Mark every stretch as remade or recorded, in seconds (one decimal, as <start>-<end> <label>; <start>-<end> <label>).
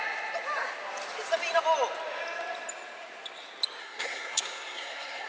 0.0-3.8 recorded; 3.8-5.3 remade